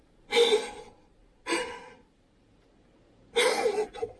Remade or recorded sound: recorded